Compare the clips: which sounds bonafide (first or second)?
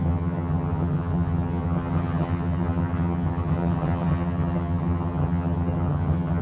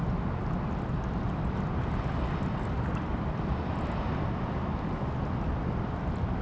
second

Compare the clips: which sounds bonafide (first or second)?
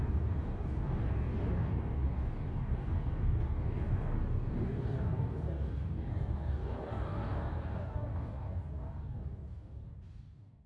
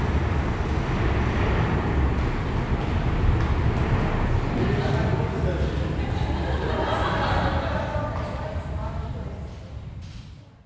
second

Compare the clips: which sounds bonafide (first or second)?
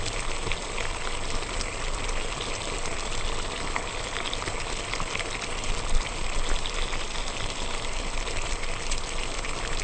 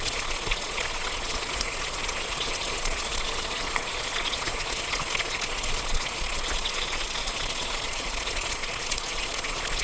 first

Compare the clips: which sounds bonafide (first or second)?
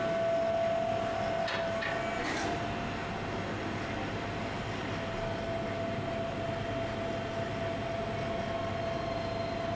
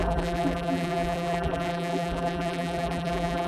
first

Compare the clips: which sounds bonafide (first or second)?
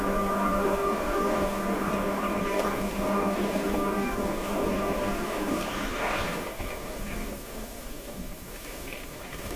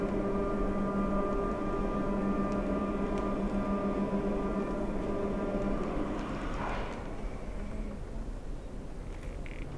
second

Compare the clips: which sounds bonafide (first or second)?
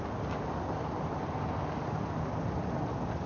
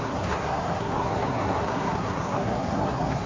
first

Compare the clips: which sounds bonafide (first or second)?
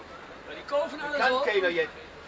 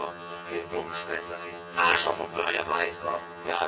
first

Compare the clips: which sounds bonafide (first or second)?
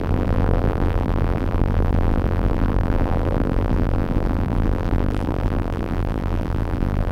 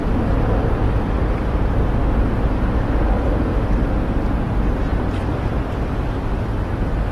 second